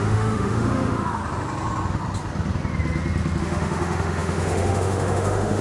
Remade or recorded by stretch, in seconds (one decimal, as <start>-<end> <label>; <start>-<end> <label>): 0.0-1.2 remade; 1.2-3.4 recorded; 3.4-5.6 remade